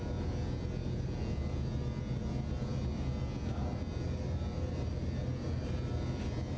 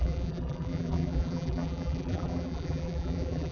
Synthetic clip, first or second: second